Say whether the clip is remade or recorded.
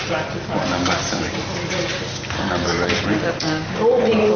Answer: recorded